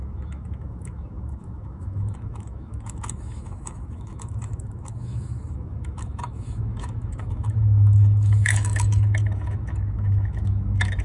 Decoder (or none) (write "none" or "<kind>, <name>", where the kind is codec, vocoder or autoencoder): autoencoder, DAC-VAE